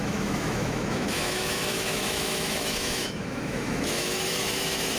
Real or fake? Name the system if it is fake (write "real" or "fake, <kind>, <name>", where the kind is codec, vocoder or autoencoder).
fake, autoencoder, DAC-VAE